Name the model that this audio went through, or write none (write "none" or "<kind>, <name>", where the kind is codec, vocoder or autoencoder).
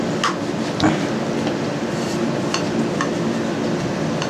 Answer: none